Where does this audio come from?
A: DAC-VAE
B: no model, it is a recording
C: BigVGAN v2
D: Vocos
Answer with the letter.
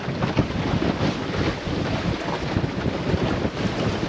B